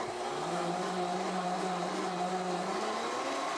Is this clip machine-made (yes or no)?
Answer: no